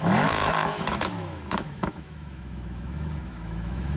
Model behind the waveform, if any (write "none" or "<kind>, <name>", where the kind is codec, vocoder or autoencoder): autoencoder, DAC-VAE